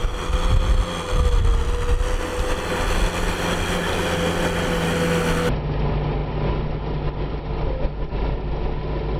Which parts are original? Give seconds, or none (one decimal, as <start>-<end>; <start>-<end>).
0.0-9.2